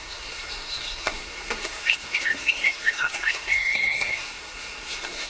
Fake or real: fake